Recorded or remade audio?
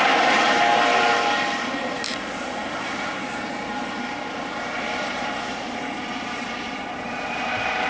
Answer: remade